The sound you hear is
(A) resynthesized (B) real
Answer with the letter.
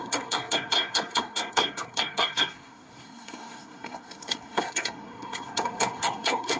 A